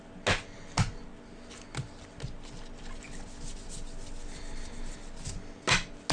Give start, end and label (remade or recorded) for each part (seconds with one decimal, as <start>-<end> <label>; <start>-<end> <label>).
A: 0.0-6.1 recorded